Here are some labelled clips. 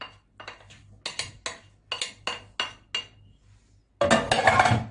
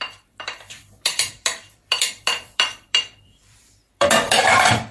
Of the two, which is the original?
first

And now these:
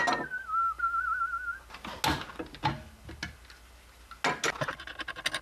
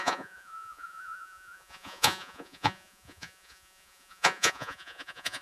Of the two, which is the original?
first